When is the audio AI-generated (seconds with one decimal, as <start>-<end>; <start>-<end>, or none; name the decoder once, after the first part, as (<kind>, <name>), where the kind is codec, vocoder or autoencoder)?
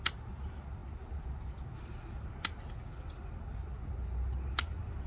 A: none